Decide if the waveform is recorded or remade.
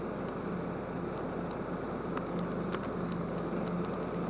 recorded